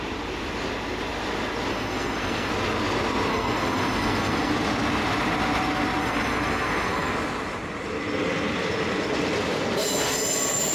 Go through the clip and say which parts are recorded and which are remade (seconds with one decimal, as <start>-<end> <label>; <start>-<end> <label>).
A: 0.0-1.7 recorded; 1.7-2.5 remade; 2.5-3.3 recorded; 3.3-4.5 remade; 4.5-6.0 recorded; 6.0-7.1 remade; 7.1-10.7 recorded